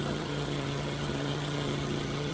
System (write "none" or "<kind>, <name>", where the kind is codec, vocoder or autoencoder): vocoder, HiFi-GAN